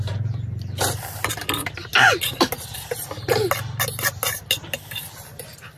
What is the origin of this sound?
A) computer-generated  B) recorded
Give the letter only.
B